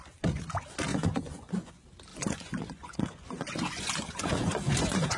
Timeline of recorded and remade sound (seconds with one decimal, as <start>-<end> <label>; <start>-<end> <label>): 0.0-0.9 recorded; 0.9-1.7 remade; 1.7-2.1 recorded; 2.1-5.2 remade